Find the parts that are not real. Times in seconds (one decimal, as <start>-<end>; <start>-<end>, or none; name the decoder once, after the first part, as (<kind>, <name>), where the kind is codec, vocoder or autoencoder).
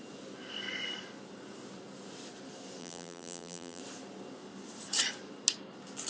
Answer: 2.8-3.8 (vocoder, BigVGAN v2)